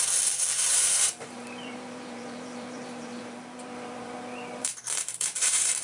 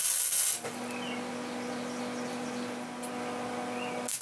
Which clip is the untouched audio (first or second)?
second